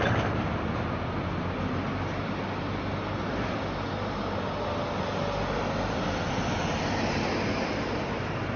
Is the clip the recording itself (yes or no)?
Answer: yes